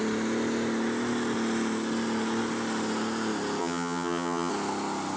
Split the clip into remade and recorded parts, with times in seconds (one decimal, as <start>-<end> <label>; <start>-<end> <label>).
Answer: 0.0-3.6 recorded; 3.6-4.5 remade; 4.5-5.2 recorded